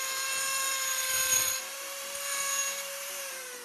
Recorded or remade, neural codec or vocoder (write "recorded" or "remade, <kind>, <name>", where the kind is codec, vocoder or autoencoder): remade, vocoder, BigVGAN v2